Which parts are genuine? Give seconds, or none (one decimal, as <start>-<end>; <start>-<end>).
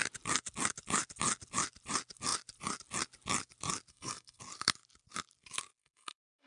0.0-3.9; 4.4-5.8